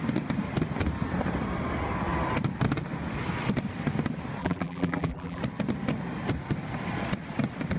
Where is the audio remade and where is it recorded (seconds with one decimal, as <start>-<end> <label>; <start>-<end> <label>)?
0.0-4.4 recorded; 4.4-5.4 remade; 5.4-7.8 recorded